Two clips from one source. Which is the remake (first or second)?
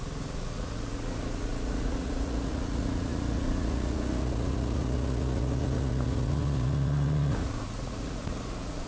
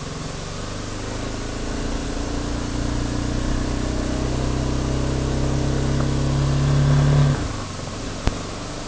first